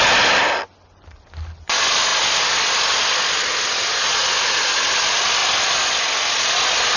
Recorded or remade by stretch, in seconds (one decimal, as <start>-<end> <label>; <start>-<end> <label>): 0.0-7.0 recorded